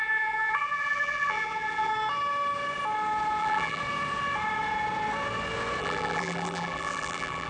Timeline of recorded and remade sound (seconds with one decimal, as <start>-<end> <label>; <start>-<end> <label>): 0.0-1.9 remade; 1.9-3.4 recorded; 3.4-3.8 remade; 3.8-5.8 recorded; 5.8-7.5 remade